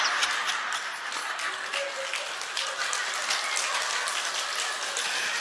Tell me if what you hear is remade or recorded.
recorded